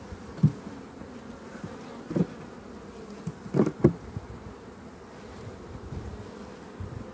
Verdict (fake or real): real